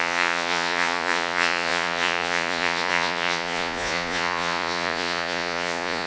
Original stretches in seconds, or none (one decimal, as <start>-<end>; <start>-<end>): none

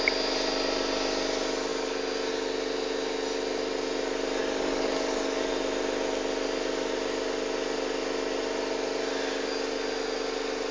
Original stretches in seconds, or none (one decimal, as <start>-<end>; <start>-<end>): 0.0-4.4; 5.5-10.7

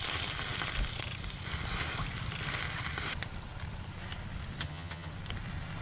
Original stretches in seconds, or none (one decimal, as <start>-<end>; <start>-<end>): 0.0-4.6; 5.1-5.8

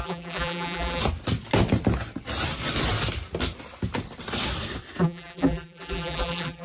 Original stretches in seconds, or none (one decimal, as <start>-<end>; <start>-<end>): 1.0-5.0

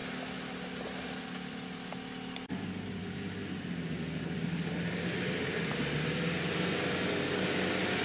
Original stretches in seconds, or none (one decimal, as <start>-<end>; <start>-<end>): 0.0-8.0

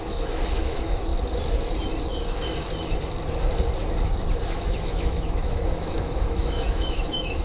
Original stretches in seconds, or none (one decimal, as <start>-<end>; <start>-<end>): 1.1-4.4